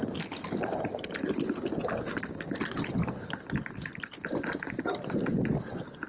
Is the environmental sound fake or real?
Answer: real